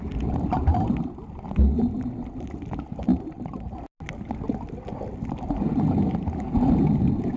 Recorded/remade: recorded